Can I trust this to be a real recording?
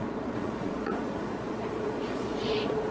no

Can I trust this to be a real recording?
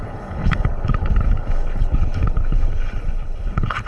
no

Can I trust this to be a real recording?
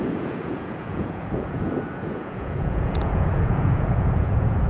no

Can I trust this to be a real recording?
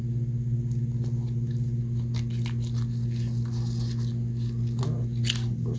yes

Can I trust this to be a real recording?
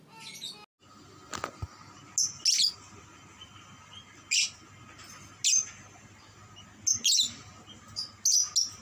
yes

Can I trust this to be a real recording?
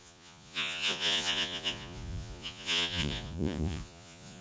no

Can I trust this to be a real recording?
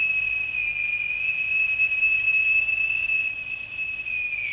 yes